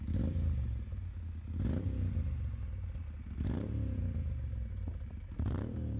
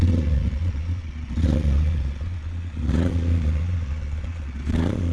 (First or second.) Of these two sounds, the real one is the first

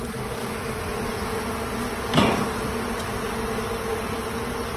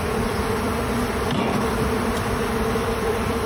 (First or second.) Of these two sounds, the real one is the first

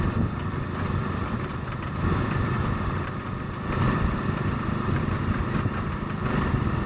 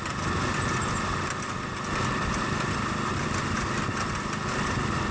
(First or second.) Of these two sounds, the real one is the second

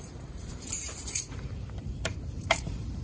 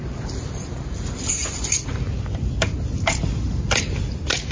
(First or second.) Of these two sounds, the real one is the second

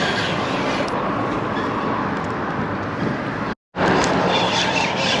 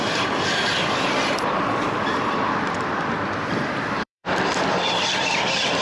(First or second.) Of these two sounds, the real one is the first